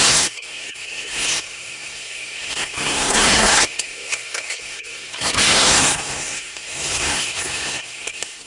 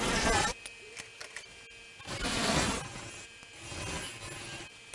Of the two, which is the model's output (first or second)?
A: first